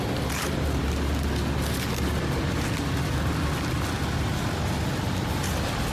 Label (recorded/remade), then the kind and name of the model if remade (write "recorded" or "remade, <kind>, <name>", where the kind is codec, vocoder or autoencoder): recorded